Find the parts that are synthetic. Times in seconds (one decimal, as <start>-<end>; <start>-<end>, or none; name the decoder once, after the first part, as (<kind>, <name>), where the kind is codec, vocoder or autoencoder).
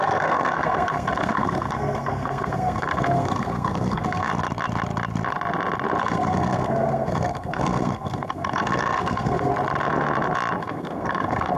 0.0-4.3 (codec, SNAC); 6.0-9.5; 10.6-11.6